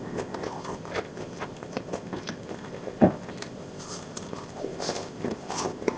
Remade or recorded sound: remade